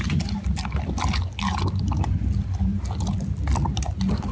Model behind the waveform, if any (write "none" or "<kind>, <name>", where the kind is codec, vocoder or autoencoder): none